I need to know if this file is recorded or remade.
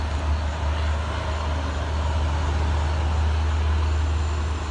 recorded